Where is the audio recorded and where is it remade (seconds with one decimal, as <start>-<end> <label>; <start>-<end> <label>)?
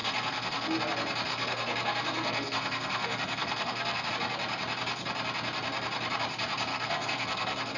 0.0-0.8 remade; 0.8-1.3 recorded; 1.3-4.1 remade; 4.1-6.7 recorded; 6.7-7.8 remade